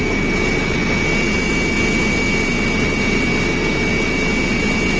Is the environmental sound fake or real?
real